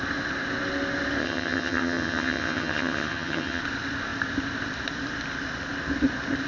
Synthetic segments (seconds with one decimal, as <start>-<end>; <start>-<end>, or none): 1.2-3.6